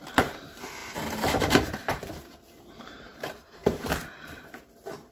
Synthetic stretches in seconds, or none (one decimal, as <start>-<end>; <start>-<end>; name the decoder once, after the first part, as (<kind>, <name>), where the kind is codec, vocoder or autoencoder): 0.0-5.1 (vocoder, BigVGAN v2)